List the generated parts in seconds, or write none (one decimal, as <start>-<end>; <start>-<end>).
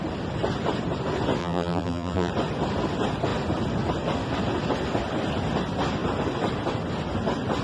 1.4-2.3